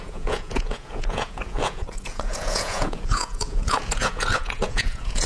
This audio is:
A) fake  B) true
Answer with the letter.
A